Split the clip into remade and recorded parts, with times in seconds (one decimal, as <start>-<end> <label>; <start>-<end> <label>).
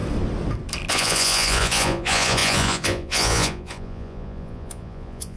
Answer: 0.0-0.9 recorded; 0.9-5.4 remade